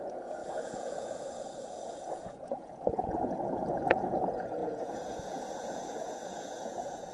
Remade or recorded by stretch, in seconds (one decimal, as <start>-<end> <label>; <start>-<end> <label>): 0.0-7.1 remade